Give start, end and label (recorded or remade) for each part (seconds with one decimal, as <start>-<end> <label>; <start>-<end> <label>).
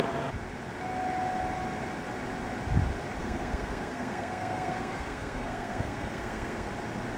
0.0-3.2 recorded; 3.2-6.7 remade; 6.7-7.2 recorded